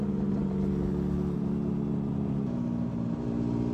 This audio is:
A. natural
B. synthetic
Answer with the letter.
A